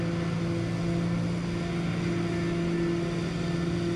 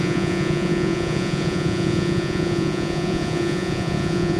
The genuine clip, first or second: first